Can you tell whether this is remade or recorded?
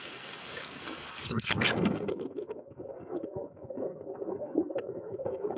remade